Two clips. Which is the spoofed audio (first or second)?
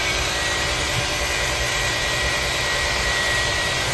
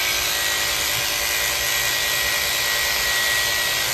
first